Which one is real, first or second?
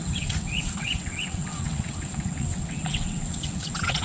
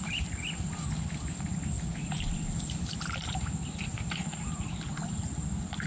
second